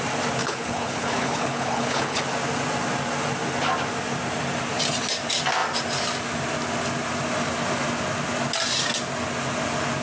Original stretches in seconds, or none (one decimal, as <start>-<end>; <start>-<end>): 0.0-0.4; 2.2-10.0